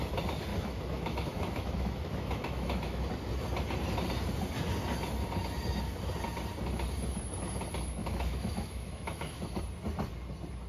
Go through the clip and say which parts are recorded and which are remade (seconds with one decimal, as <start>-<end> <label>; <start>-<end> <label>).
0.0-0.5 recorded; 0.5-3.0 remade; 3.0-8.0 recorded; 8.0-9.6 remade; 9.6-10.7 recorded